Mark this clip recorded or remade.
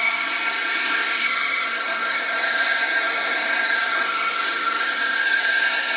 remade